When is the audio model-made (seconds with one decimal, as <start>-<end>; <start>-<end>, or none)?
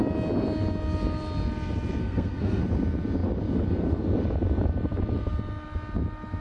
2.0-2.6